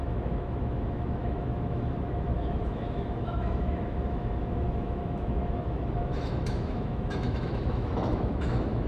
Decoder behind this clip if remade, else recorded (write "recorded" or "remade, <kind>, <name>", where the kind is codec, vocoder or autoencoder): remade, autoencoder, DAC-VAE